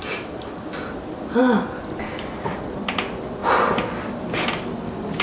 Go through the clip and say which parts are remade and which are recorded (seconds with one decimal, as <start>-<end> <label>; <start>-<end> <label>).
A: 0.0-5.2 recorded